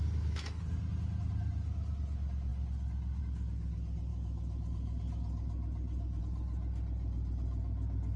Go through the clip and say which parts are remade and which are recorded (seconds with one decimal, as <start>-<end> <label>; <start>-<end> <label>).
0.0-0.6 remade; 0.6-8.2 recorded